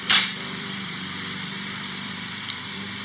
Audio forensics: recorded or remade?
remade